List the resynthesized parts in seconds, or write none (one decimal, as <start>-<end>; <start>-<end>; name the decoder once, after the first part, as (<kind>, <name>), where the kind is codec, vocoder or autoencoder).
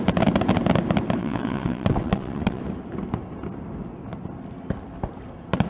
1.2-2.6 (vocoder, WaveNeXt)